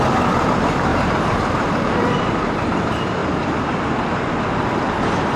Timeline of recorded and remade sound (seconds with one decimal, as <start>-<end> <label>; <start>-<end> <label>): 0.0-0.9 recorded; 0.9-2.6 remade; 2.6-5.4 recorded